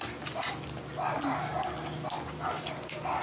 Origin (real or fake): real